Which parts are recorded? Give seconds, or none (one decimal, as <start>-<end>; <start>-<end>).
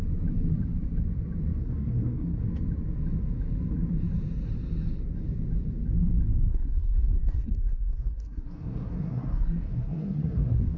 0.0-1.6; 2.5-6.5